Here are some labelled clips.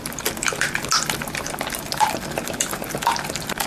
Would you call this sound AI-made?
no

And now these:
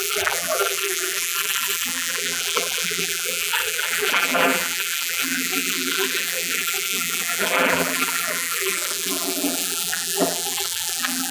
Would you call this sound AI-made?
yes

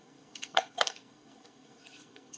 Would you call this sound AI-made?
yes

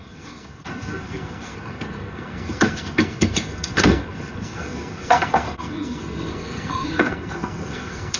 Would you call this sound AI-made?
yes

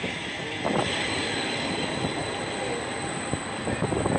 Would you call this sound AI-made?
no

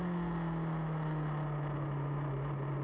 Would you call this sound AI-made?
no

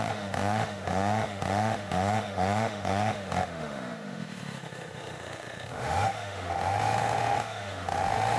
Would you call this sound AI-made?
yes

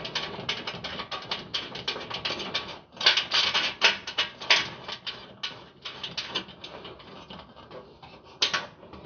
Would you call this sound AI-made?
no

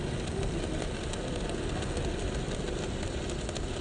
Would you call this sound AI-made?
no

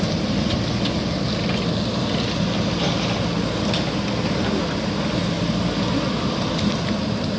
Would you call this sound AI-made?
no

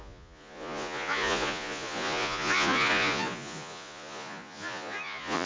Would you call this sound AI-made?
yes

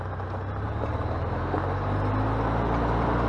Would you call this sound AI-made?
no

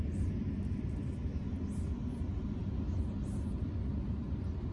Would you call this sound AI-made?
no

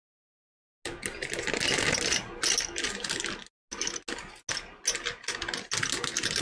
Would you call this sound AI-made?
no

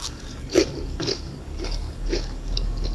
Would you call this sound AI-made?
yes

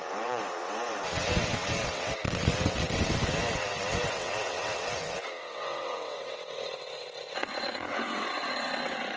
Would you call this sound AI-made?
yes